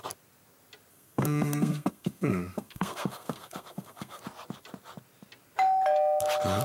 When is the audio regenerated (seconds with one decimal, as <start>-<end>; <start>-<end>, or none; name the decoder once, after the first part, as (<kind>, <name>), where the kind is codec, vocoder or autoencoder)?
0.9-4.2 (codec, SNAC)